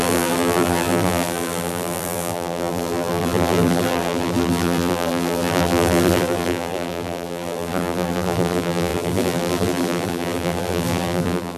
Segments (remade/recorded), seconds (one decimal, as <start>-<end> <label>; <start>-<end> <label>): 0.0-11.6 remade